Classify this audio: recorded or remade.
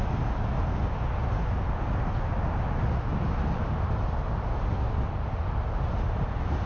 recorded